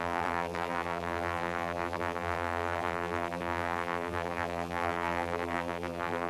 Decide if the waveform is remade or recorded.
remade